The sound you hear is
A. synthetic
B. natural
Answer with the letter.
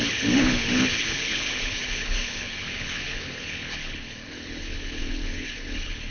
A